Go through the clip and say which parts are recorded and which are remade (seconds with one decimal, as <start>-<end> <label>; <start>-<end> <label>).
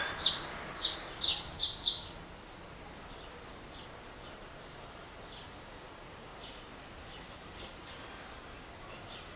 0.0-9.4 recorded